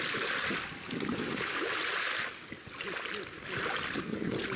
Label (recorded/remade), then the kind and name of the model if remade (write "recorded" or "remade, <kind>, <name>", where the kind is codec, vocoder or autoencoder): recorded